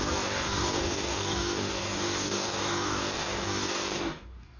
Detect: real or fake fake